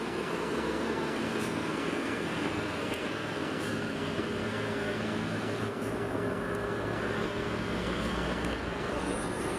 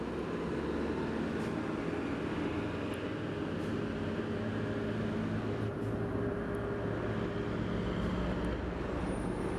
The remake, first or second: first